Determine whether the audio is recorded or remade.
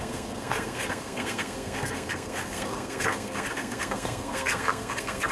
remade